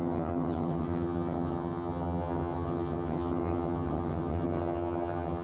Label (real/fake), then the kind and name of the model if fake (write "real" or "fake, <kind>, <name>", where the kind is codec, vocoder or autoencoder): fake, vocoder, HiFi-GAN